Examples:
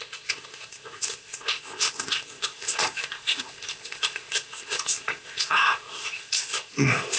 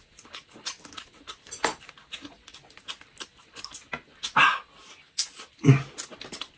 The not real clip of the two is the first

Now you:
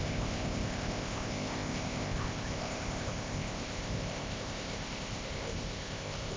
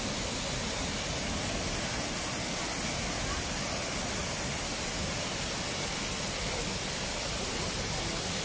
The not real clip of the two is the first